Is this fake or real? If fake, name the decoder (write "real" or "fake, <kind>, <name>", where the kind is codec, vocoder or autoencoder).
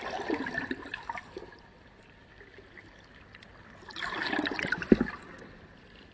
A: real